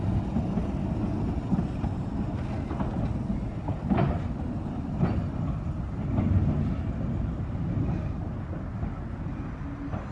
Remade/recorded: recorded